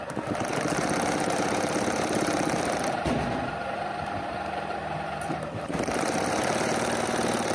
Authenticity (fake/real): fake